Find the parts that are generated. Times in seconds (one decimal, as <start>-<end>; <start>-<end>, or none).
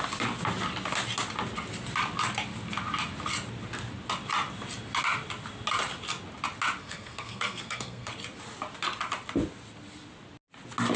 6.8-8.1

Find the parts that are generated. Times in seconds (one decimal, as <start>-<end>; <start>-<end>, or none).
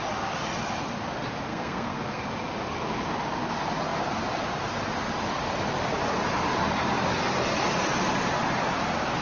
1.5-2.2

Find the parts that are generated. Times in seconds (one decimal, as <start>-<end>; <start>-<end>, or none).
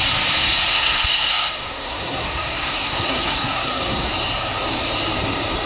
0.7-4.1